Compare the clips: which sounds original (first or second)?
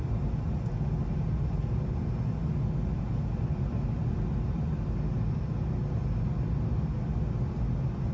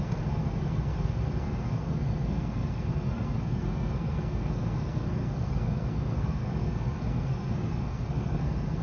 first